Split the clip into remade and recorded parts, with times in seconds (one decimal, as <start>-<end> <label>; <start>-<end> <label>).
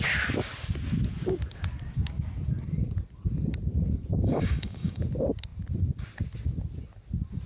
0.0-4.1 recorded; 4.1-5.0 remade; 5.0-7.5 recorded